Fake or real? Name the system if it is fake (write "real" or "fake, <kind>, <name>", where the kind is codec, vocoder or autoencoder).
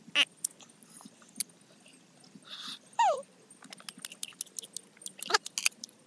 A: real